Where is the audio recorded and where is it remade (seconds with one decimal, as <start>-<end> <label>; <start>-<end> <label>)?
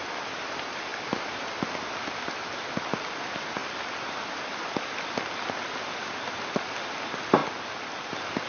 0.0-0.9 remade; 0.9-2.5 recorded; 2.5-3.6 remade; 3.6-5.7 recorded; 5.7-7.4 remade; 7.4-8.1 recorded; 8.1-8.5 remade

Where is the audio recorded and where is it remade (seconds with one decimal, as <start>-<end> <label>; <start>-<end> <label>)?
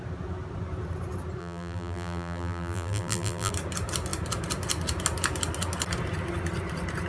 0.0-1.4 recorded; 1.4-3.5 remade; 3.5-7.1 recorded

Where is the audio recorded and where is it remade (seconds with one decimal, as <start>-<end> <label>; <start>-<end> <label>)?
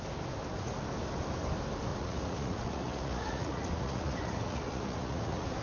0.0-1.9 recorded; 1.9-5.6 remade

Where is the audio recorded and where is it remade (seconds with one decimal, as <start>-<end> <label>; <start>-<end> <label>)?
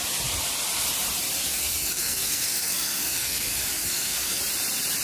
0.0-1.4 recorded; 1.4-4.4 remade; 4.4-5.0 recorded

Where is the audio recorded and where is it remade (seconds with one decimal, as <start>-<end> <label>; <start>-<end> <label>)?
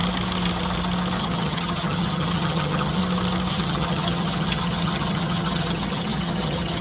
0.0-1.2 recorded; 1.2-3.0 remade; 3.0-3.5 recorded; 3.5-6.8 remade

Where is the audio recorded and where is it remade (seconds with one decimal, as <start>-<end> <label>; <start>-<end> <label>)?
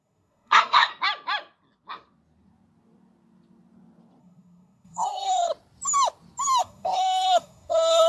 0.0-0.9 remade; 0.9-4.2 recorded; 4.2-5.5 remade; 5.5-6.6 recorded; 6.6-8.1 remade